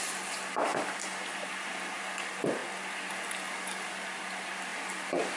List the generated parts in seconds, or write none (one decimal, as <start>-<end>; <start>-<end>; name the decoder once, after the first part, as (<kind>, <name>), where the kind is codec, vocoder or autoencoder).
none

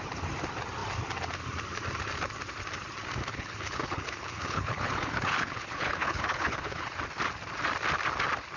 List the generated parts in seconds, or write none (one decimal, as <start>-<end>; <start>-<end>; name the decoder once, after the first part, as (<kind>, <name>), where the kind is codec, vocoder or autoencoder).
3.2-7.0 (codec, HILCodec)

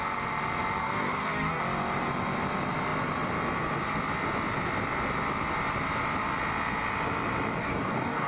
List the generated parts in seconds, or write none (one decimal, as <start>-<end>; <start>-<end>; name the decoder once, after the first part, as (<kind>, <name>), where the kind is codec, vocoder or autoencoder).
0.8-1.6 (codec, DAC); 7.6-8.3

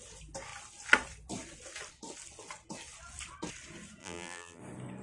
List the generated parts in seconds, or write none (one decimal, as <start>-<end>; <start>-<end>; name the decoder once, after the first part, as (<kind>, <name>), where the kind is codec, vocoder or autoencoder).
4.0-4.6 (vocoder, BigVGAN v2)